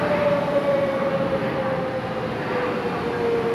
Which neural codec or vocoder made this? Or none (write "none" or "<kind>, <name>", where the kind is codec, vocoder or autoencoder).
none